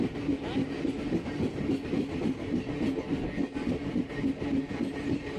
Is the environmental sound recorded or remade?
recorded